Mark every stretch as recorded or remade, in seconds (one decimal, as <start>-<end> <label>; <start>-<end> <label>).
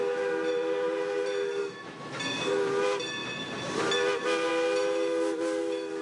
0.0-1.6 recorded; 1.6-2.2 remade; 2.2-6.0 recorded